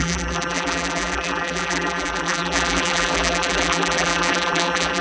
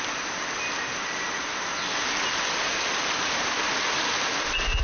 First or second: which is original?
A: second